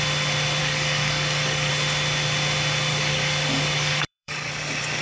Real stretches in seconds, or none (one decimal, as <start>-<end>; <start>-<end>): 0.0-0.6; 1.7-2.9; 4.5-5.0